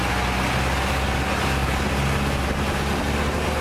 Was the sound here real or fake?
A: real